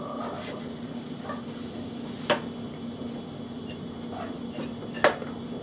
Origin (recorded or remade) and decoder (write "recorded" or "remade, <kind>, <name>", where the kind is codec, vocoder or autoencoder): recorded